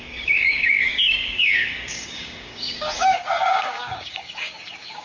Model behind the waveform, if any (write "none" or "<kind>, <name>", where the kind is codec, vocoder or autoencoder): codec, DAC